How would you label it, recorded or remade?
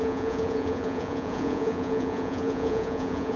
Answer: remade